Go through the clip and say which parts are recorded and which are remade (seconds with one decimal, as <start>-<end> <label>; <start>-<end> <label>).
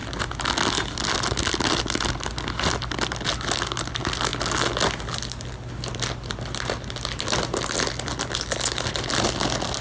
0.0-9.8 recorded